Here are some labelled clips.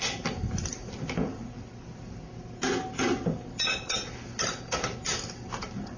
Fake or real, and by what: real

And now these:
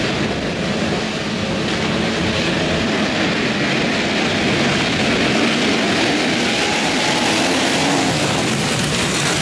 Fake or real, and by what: real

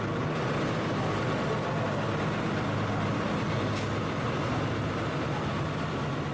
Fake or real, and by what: real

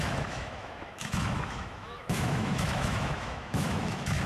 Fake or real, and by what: fake, autoencoder, DAC-VAE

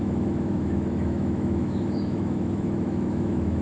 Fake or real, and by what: fake, autoencoder, DAC-VAE